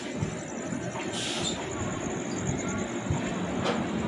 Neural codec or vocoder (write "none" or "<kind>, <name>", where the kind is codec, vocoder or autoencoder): none